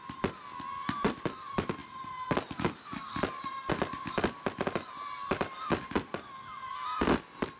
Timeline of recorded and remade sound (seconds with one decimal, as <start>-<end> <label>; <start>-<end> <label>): 0.0-7.6 recorded